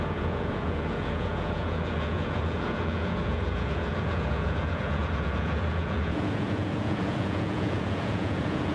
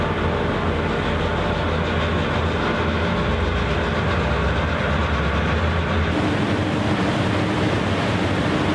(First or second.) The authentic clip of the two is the second